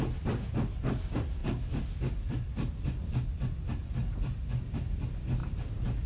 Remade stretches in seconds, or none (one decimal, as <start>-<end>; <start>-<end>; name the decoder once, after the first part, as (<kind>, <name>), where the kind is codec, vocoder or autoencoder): none